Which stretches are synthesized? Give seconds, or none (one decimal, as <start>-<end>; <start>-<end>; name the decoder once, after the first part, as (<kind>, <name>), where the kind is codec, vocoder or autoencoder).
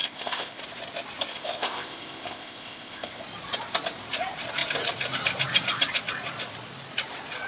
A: 0.0-0.6 (codec, ZipCodec); 1.3-3.2